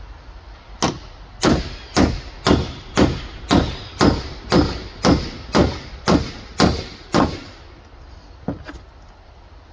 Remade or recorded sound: recorded